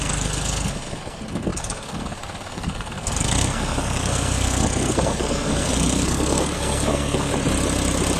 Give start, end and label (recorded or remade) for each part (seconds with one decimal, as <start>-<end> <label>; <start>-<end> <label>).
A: 0.0-7.3 remade; 7.3-8.2 recorded